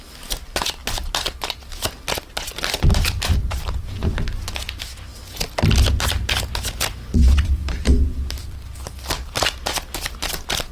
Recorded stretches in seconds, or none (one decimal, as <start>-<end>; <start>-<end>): 0.0-10.7